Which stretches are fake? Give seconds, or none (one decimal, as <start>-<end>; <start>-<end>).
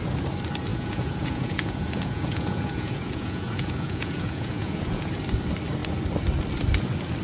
0.7-5.0